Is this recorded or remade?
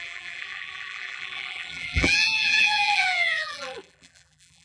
remade